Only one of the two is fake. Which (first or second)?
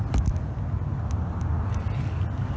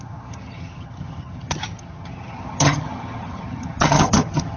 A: second